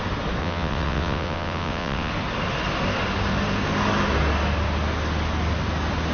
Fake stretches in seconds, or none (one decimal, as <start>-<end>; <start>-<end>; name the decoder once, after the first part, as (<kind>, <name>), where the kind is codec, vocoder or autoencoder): 0.4-2.1 (vocoder, WaveNeXt)